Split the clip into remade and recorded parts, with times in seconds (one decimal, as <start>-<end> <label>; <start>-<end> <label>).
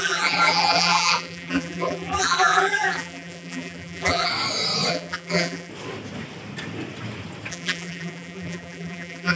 0.0-4.3 remade; 4.3-4.9 recorded; 4.9-5.7 remade; 5.7-7.5 recorded; 7.5-9.4 remade